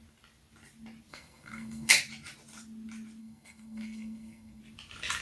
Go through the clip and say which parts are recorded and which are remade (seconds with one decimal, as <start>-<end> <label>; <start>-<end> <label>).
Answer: 0.0-1.1 recorded; 1.1-1.9 remade; 1.9-3.2 recorded; 3.2-4.6 remade; 4.6-5.2 recorded